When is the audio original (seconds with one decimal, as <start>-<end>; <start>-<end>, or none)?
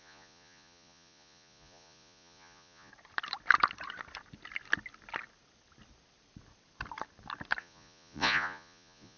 2.9-7.6